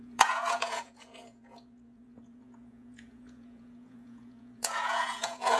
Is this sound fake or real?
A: fake